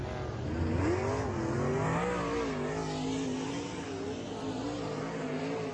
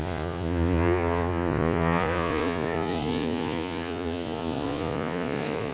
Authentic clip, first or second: first